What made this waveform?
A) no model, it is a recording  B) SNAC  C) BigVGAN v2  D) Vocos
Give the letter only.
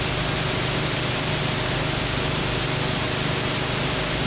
A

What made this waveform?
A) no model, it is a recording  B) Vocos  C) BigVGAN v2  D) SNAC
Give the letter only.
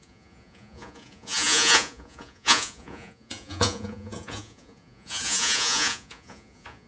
B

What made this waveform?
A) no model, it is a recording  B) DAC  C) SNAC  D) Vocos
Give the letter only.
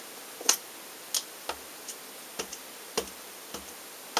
A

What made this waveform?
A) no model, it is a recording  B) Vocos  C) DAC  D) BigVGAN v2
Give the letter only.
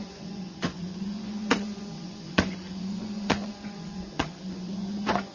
B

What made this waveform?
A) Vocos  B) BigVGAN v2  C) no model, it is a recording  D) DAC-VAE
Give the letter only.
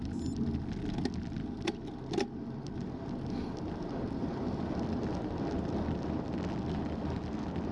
C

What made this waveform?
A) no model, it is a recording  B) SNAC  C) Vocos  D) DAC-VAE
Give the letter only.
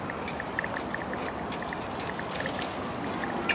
A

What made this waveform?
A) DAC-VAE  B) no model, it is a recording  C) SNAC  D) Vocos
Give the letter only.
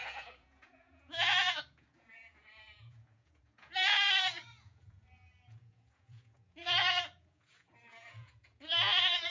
D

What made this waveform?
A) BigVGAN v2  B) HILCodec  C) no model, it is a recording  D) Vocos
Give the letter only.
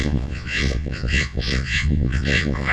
D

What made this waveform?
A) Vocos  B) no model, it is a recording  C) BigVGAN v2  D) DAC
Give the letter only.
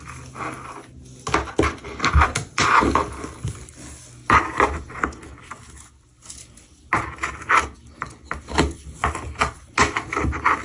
B